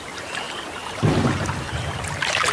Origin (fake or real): fake